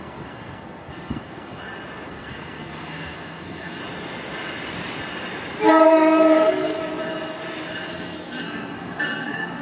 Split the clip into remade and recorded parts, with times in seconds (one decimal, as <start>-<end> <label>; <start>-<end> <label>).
0.0-1.6 remade; 1.6-2.1 recorded; 2.1-3.8 remade; 3.8-5.7 recorded; 5.7-6.8 remade; 6.8-7.9 recorded; 7.9-9.6 remade